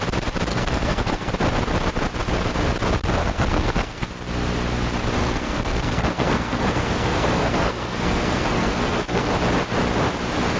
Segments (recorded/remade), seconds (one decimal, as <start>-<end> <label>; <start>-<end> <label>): 0.0-0.5 recorded; 0.5-1.3 remade; 1.3-3.2 recorded; 3.2-4.1 remade; 4.1-5.2 recorded; 5.2-9.3 remade; 9.3-10.6 recorded